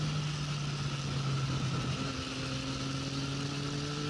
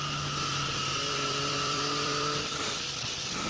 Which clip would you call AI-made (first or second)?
second